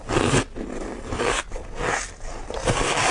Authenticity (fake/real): real